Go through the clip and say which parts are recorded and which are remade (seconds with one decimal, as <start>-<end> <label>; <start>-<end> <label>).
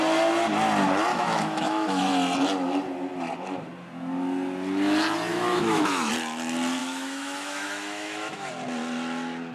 0.0-1.1 recorded; 1.1-2.1 remade; 2.1-5.3 recorded; 5.3-6.1 remade; 6.1-6.8 recorded; 6.8-8.5 remade; 8.5-9.5 recorded